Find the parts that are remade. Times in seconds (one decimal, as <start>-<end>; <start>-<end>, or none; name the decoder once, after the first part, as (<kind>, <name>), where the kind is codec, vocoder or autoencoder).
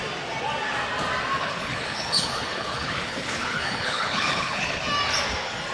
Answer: 1.4-4.8 (codec, HILCodec)